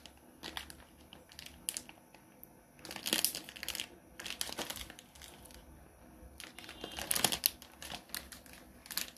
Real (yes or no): yes